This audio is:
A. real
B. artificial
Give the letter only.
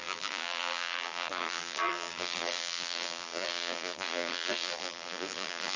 B